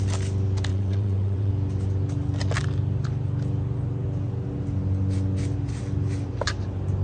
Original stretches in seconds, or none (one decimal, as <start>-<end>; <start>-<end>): 0.0-0.7; 1.5-7.0